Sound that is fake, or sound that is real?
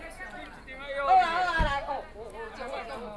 real